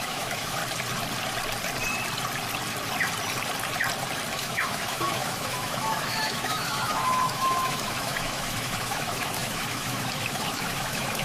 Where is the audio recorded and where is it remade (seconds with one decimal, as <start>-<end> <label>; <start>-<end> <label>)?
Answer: 0.0-0.6 remade; 0.6-4.3 recorded; 4.3-11.2 remade